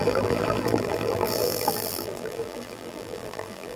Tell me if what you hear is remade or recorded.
remade